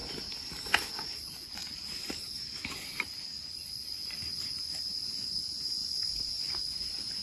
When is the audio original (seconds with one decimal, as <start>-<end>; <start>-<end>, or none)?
0.0-0.9; 1.6-5.0

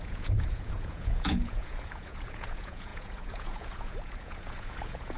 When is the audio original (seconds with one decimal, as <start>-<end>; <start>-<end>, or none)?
none

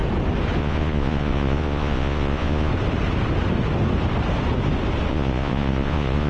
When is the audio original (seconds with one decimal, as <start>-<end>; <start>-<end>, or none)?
0.0-0.6; 2.7-5.1